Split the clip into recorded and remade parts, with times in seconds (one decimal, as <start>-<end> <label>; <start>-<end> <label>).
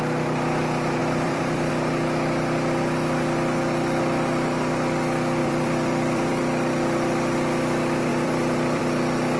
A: 0.0-1.0 recorded; 1.0-1.7 remade; 1.7-5.4 recorded; 5.4-6.4 remade; 6.4-8.1 recorded; 8.1-8.8 remade; 8.8-9.4 recorded